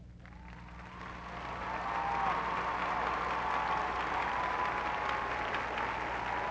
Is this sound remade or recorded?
recorded